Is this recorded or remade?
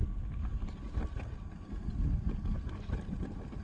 recorded